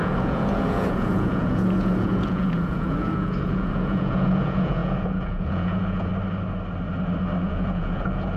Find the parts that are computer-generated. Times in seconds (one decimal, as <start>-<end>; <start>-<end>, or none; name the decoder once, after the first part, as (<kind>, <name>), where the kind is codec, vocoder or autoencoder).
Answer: 0.0-6.1 (vocoder, Vocos); 7.4-8.4